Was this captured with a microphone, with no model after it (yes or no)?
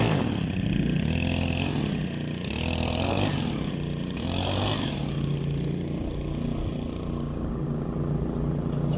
yes